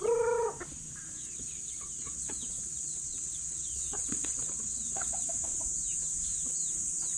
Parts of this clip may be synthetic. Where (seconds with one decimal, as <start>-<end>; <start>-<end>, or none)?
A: 1.2-5.3